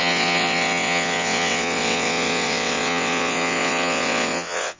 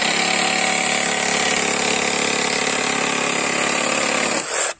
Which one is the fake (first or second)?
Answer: first